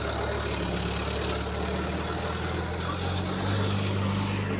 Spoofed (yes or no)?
no